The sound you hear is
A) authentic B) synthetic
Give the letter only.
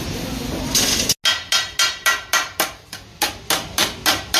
A